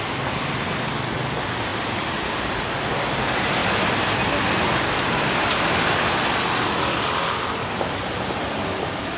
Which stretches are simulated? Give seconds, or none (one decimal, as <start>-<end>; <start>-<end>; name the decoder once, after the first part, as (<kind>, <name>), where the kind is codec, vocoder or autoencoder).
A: none